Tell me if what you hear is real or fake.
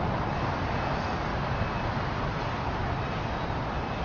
real